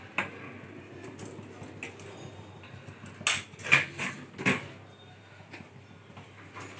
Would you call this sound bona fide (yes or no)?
yes